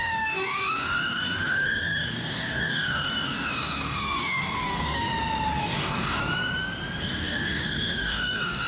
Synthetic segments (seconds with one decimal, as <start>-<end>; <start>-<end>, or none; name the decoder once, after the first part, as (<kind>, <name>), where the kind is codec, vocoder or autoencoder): 0.0-5.1 (codec, DAC); 5.6-6.2; 7.0-8.7